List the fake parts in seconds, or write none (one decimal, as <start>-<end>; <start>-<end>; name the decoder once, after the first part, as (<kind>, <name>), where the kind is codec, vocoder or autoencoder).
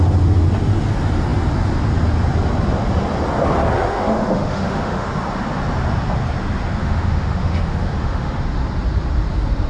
3.9-5.1 (autoencoder, DAC-VAE); 6.8-8.4